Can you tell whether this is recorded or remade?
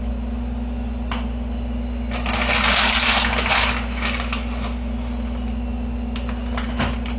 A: recorded